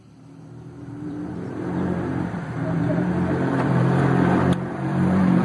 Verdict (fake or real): fake